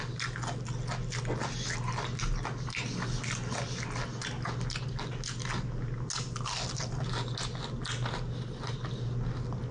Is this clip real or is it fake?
real